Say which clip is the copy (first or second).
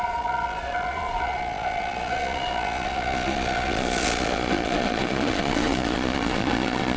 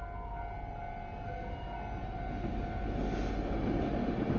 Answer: first